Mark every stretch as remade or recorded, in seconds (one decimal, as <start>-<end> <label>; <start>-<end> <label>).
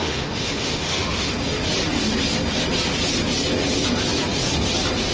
0.0-1.3 remade; 1.3-5.1 recorded